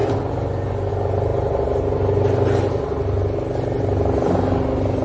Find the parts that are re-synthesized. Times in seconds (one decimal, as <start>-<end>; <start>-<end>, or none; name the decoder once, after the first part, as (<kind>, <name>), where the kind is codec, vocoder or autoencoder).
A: none